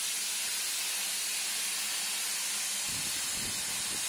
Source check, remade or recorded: recorded